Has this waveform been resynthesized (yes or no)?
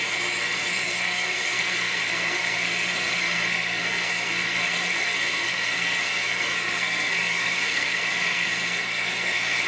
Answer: yes